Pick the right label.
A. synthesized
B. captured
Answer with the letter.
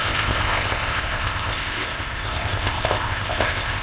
A